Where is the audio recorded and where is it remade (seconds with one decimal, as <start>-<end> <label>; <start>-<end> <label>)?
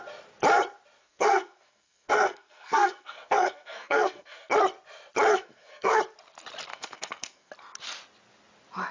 0.0-1.0 recorded; 1.0-4.5 remade; 4.5-5.3 recorded; 5.3-6.0 remade; 6.0-6.7 recorded; 6.7-7.5 remade; 7.5-8.9 recorded